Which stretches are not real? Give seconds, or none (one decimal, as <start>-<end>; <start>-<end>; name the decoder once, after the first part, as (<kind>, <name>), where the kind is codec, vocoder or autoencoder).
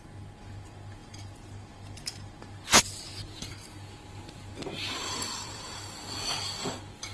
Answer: 1.0-3.5 (vocoder, BigVGAN v2); 5.0-5.7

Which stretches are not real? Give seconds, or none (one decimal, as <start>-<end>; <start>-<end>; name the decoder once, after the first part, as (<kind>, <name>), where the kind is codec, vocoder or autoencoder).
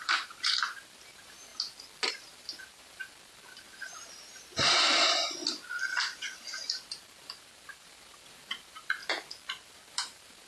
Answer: 0.0-1.5 (vocoder, BigVGAN v2); 2.1-5.4; 6.6-9.0; 9.5-10.5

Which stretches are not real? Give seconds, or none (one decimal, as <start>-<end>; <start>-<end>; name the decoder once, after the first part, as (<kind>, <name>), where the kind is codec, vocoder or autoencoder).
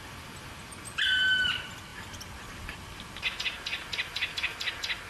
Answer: 1.9-5.1 (vocoder, BigVGAN v2)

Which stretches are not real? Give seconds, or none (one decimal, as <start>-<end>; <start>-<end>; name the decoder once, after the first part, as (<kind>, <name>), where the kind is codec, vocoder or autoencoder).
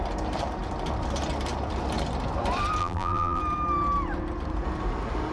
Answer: 2.8-3.4 (vocoder, BigVGAN v2)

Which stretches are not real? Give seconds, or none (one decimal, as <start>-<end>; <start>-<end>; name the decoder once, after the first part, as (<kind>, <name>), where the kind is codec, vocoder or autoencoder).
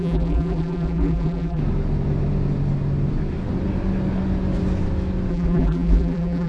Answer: 0.0-1.6 (vocoder, BigVGAN v2); 5.3-6.5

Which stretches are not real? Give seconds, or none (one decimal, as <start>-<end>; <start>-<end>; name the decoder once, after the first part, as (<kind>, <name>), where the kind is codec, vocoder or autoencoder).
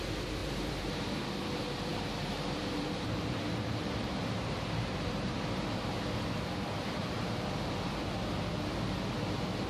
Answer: 0.4-1.2 (vocoder, BigVGAN v2); 1.9-5.6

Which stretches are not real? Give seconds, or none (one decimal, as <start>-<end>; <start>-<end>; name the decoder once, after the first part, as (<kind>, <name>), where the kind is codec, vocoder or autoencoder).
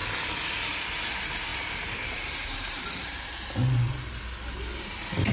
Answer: 1.5-4.2 (vocoder, BigVGAN v2)